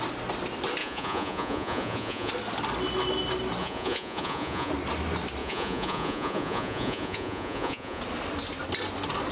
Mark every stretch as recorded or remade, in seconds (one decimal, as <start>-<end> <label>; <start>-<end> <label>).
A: 0.0-0.8 recorded; 0.8-2.3 remade; 2.3-3.6 recorded; 3.6-4.7 remade; 4.7-5.4 recorded; 5.4-8.0 remade; 8.0-9.3 recorded